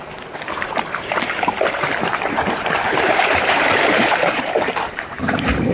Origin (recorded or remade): remade